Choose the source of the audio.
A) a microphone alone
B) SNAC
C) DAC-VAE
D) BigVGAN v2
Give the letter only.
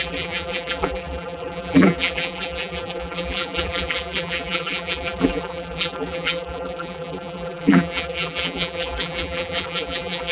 D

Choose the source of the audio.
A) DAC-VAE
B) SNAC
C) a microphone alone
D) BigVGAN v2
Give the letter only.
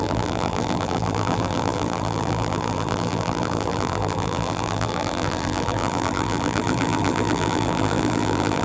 D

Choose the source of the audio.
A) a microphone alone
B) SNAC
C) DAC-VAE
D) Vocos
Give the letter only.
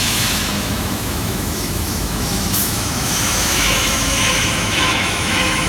C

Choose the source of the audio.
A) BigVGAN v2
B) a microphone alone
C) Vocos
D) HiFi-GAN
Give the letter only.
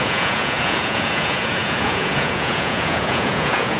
C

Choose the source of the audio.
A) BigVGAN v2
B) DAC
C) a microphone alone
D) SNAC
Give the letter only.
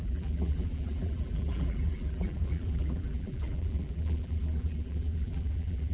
A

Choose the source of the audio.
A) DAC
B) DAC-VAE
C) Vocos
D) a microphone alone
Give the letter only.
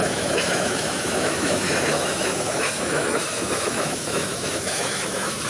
B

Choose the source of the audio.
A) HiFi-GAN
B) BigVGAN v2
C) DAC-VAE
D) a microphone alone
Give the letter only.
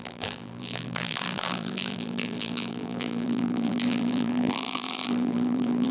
B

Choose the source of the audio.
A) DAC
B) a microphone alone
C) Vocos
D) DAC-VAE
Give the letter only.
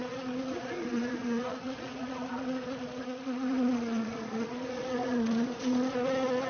C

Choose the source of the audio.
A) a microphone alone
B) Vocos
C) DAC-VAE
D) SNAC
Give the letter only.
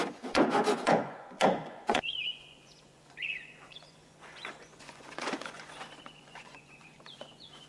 B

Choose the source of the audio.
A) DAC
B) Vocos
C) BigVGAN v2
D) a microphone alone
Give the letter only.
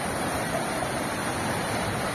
C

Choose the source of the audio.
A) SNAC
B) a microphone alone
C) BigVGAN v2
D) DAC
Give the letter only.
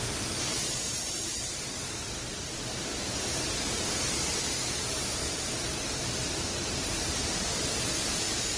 C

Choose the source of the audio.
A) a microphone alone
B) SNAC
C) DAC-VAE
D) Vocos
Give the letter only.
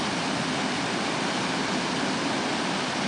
A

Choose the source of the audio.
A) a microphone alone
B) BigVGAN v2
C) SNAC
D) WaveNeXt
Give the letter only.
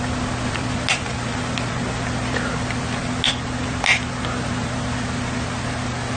A